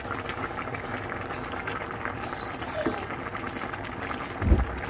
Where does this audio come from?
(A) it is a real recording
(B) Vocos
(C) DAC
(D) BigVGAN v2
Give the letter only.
D